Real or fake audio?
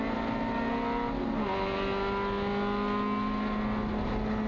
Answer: real